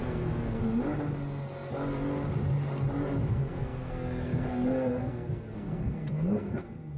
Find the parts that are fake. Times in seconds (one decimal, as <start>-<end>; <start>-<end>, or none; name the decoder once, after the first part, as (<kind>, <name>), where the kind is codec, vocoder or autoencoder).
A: 0.0-0.6 (codec, SNAC); 3.3-7.0